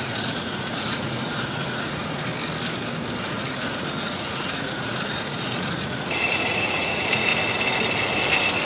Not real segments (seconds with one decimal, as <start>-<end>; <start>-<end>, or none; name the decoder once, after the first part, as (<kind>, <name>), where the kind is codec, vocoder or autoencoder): 0.0-2.3 (vocoder, Vocos); 3.2-7.3